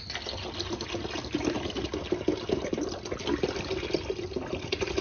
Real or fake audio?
real